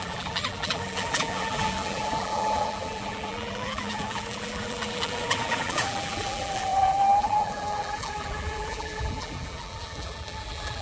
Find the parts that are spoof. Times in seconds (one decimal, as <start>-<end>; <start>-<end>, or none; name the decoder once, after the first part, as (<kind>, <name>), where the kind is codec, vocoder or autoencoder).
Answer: 0.0-10.8 (vocoder, BigVGAN v2)